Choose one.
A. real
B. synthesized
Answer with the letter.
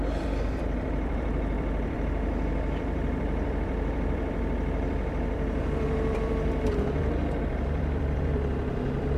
B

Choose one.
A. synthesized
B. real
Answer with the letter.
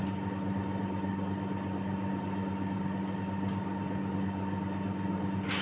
B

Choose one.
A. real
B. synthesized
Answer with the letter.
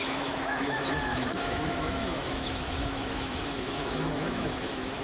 B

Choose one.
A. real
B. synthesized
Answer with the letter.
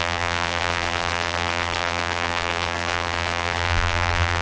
B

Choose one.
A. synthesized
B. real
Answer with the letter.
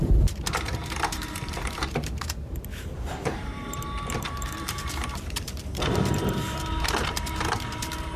A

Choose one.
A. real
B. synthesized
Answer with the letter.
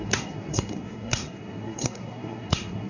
B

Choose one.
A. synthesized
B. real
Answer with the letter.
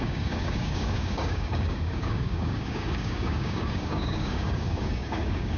A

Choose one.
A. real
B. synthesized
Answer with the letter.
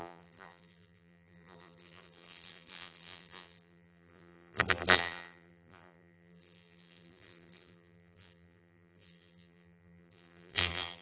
B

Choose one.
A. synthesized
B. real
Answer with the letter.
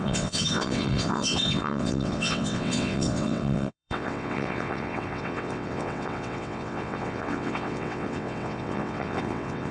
A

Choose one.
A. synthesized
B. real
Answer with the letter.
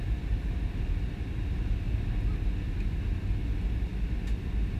B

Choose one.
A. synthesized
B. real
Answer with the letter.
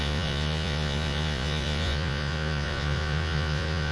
A